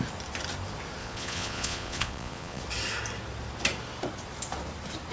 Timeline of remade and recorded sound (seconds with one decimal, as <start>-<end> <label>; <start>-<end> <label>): 0.0-1.0 recorded; 1.0-2.6 remade; 2.6-5.1 recorded